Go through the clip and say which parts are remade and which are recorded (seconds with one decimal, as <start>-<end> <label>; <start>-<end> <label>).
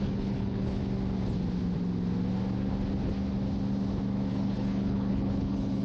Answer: 0.0-0.8 remade; 0.8-4.3 recorded; 4.3-5.8 remade